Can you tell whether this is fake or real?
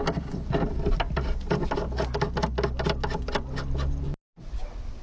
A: real